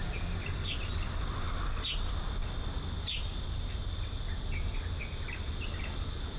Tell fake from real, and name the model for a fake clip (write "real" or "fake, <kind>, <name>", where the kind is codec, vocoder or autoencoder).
real